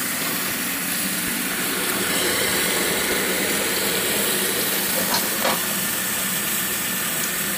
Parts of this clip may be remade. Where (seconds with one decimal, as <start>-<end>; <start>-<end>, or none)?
0.0-0.4; 1.3-2.5; 7.0-7.6